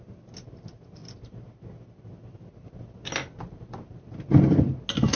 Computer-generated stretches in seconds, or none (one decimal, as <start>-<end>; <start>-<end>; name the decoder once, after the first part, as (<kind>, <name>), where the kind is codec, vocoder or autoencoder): none